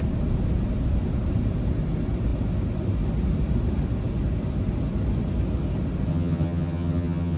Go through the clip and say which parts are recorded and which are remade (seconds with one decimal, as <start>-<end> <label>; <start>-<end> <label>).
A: 0.0-6.1 recorded; 6.1-7.4 remade